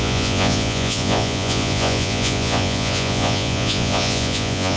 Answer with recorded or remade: remade